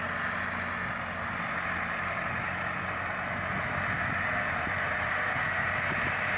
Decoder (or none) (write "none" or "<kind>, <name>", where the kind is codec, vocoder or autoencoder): none